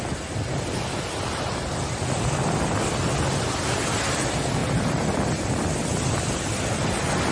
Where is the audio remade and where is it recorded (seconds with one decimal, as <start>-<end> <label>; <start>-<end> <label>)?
0.0-7.3 recorded